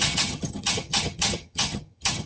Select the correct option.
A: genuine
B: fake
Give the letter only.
B